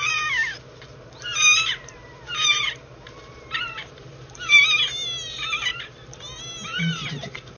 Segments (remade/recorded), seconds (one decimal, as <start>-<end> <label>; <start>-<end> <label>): 0.0-7.6 remade